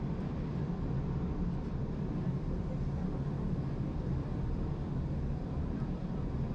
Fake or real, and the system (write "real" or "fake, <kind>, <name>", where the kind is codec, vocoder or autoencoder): fake, vocoder, BigVGAN v2